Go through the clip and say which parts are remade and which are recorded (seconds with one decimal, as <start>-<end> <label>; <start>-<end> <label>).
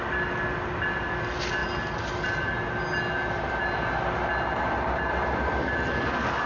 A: 0.0-6.5 recorded